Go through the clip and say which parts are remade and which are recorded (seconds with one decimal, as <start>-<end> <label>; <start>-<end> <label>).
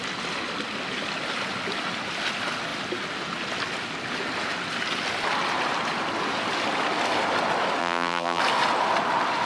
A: 0.0-7.8 recorded; 7.8-8.4 remade; 8.4-9.5 recorded